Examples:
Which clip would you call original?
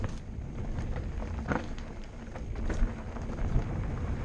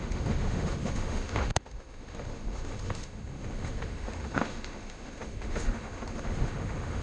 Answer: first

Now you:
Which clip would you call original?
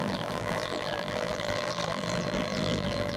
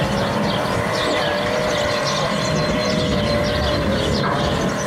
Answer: second